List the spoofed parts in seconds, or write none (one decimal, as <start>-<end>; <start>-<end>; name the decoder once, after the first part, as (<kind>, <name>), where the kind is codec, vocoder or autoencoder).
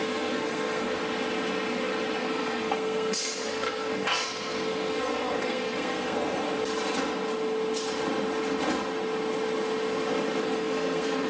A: 0.0-1.0 (codec, SNAC); 2.2-6.4; 10.4-11.3